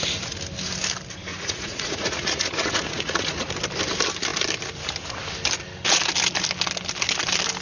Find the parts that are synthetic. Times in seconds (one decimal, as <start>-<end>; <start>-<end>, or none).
1.3-3.5